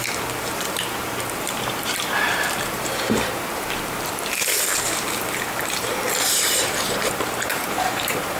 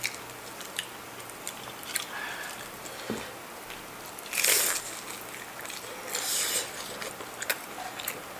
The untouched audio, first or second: second